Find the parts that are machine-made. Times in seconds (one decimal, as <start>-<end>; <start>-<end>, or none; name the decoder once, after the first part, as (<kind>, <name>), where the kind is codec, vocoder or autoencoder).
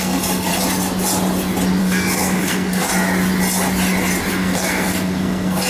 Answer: 0.0-0.5 (codec, SNAC); 1.8-2.9; 4.3-5.7